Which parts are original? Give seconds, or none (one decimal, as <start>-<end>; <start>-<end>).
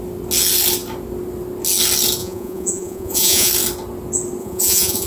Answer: 0.0-2.2; 3.5-4.4